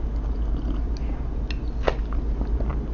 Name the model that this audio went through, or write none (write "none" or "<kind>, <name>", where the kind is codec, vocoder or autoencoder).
none